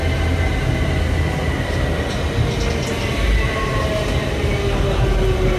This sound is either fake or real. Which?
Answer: real